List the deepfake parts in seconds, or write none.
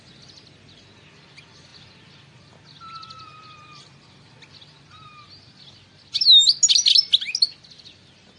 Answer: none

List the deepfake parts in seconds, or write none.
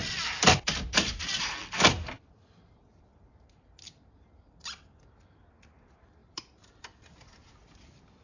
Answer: 0.0-1.1 (vocoder, BigVGAN v2); 1.6-3.3; 6.2-6.8